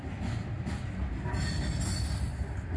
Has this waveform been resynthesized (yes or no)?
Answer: no